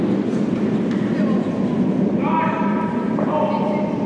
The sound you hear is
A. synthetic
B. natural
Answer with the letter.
A